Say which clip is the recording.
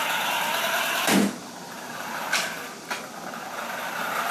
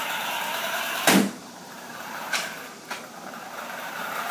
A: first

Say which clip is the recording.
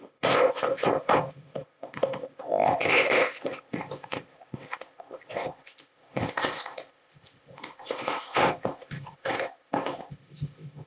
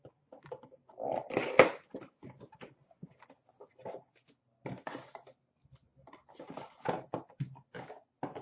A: second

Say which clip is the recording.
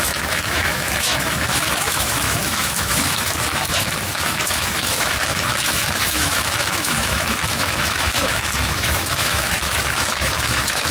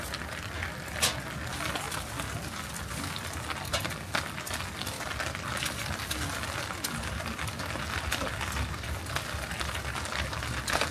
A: second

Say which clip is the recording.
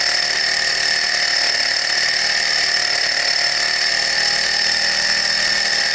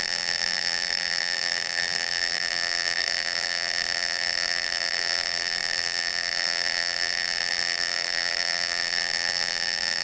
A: first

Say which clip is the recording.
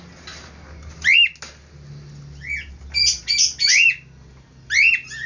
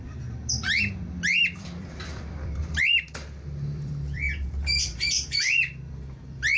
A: first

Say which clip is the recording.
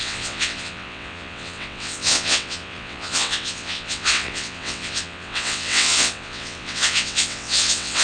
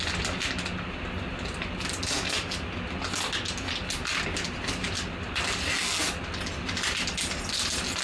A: second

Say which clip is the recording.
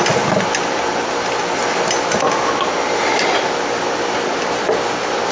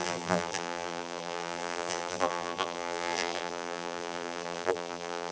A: first